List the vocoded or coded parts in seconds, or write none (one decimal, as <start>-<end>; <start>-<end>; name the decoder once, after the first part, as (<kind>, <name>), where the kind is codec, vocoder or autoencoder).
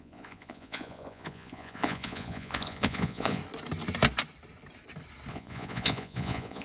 0.0-3.4 (vocoder, Vocos); 5.3-6.6